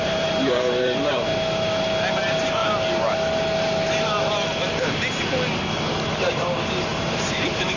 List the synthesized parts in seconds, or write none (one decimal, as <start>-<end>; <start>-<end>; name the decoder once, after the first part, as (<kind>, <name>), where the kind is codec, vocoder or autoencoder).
0.0-1.3 (vocoder, BigVGAN v2); 2.1-2.6; 6.3-7.8